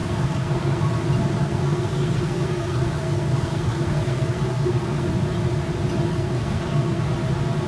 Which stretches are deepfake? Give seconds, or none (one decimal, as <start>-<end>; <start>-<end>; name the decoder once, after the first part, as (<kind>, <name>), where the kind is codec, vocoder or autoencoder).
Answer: 0.0-0.8 (codec, SNAC); 1.3-5.1; 6.1-7.0